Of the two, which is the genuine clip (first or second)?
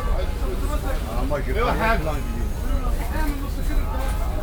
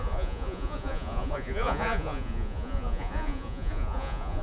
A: first